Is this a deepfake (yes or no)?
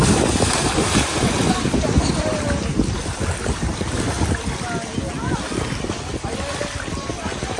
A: no